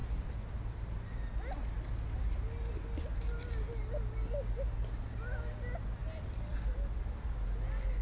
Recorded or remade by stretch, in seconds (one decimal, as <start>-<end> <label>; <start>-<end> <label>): 0.0-6.0 recorded; 6.0-7.4 remade; 7.4-8.0 recorded